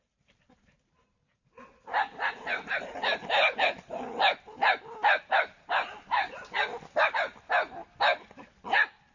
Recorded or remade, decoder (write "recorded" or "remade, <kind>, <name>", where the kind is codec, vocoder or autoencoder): recorded